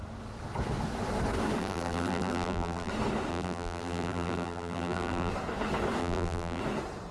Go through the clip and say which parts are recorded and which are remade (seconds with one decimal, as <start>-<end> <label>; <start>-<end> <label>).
0.0-1.6 recorded; 1.6-2.9 remade; 2.9-3.3 recorded; 3.3-5.3 remade; 5.3-6.0 recorded; 6.0-6.6 remade; 6.6-7.1 recorded

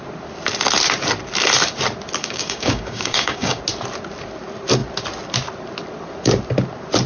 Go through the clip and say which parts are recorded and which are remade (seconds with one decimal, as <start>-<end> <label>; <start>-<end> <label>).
0.0-2.2 recorded; 2.2-3.6 remade; 3.6-7.1 recorded

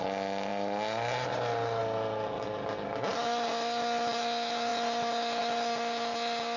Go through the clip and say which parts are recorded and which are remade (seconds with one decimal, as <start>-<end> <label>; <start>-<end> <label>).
0.0-6.6 recorded

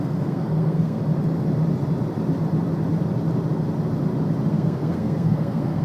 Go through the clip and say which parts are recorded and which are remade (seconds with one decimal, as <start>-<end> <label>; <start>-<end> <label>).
0.0-1.0 remade; 1.0-4.5 recorded; 4.5-5.8 remade

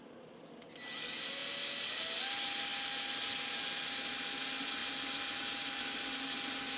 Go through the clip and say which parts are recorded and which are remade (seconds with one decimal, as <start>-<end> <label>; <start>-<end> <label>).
0.0-6.8 recorded

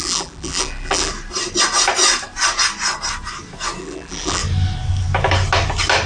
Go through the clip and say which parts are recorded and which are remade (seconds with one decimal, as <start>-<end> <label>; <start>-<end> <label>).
0.0-1.1 remade; 1.1-3.8 recorded; 3.8-4.4 remade; 4.4-6.1 recorded